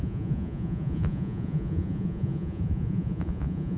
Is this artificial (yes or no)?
yes